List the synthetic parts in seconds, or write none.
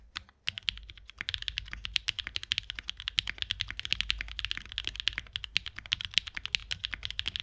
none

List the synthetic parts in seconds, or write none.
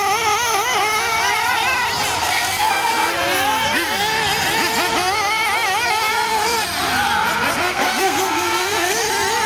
2.2-3.1 (codec, SNAC); 7.6-9.0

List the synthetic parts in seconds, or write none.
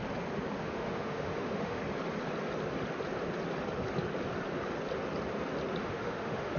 0.6-1.8 (autoencoder, DAC-VAE); 5.8-6.6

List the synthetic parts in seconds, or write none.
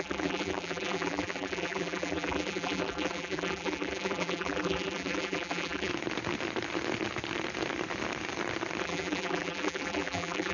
0.0-5.9 (vocoder, BigVGAN v2); 8.8-10.5